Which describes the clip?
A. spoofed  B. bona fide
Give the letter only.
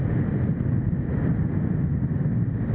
B